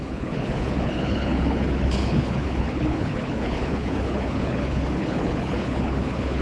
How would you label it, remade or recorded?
remade